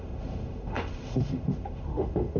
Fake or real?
fake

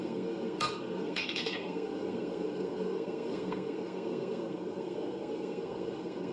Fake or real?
fake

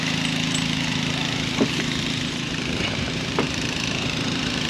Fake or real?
fake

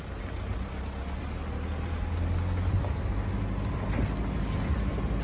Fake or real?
real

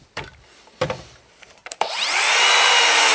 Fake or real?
fake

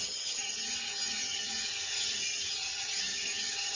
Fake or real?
fake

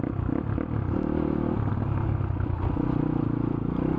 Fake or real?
real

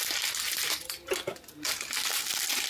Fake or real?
real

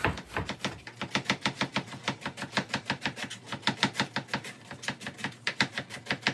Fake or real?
real